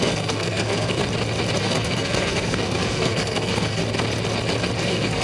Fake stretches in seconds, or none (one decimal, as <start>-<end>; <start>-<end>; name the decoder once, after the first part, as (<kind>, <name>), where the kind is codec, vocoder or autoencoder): 0.0-1.0 (codec, SNAC); 1.6-3.8; 4.8-5.2

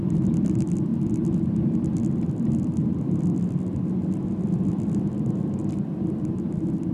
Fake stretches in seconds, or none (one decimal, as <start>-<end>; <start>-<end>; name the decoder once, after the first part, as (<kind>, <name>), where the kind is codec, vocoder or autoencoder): none

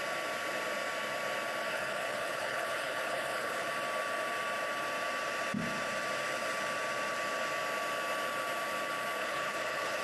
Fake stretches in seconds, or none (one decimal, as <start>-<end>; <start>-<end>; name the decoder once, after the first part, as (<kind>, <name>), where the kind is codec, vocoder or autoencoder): 1.7-3.7 (codec, HILCodec); 9.2-10.0

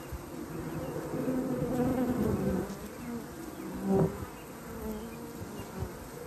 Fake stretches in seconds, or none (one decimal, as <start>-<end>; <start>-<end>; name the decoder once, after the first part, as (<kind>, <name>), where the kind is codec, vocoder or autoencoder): none

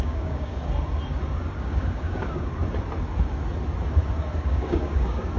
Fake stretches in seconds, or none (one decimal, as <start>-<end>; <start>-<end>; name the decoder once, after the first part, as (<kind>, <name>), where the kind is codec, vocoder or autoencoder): 0.0-0.6 (codec, DAC); 1.6-2.6; 4.4-5.4

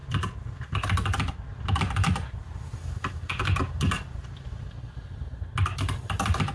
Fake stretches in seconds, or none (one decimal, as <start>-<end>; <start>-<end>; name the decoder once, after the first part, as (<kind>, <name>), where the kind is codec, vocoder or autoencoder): none

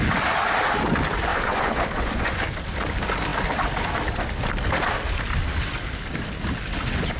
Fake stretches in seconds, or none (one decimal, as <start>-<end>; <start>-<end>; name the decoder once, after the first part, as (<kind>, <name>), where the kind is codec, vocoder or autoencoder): 1.3-2.4 (vocoder, Vocos)